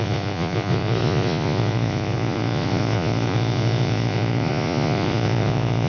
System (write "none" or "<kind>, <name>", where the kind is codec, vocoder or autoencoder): vocoder, Vocos